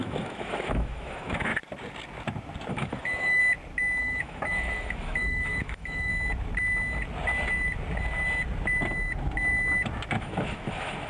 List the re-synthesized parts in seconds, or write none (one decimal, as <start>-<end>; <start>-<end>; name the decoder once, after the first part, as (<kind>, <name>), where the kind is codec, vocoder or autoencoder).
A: 0.0-1.5 (autoencoder, DAC-VAE); 2.7-3.4; 4.0-6.1; 10.2-11.1

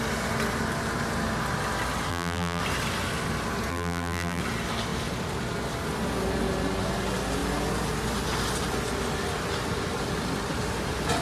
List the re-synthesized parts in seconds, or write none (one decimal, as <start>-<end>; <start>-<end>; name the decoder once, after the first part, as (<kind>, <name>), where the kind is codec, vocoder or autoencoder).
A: 2.1-2.6 (vocoder, BigVGAN v2); 3.7-4.4